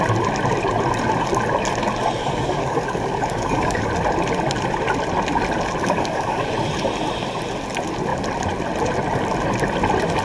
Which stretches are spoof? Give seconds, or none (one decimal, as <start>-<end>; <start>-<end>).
2.2-3.9; 5.8-6.4